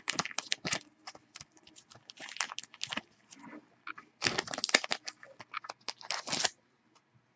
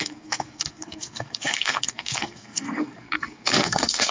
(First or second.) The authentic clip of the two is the first